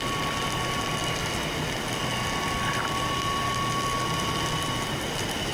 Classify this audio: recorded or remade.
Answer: recorded